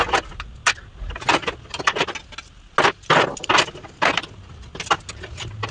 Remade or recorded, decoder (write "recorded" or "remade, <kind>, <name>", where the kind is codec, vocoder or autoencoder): recorded